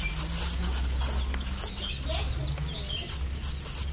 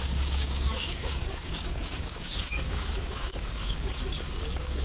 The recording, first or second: first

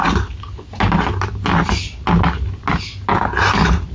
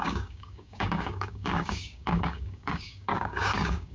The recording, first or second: first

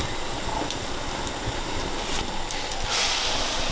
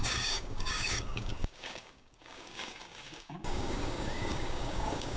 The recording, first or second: first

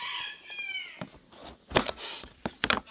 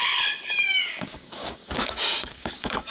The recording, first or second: first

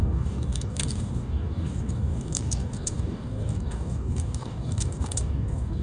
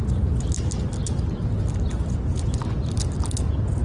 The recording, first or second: second